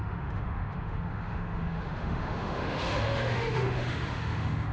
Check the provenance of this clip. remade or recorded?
remade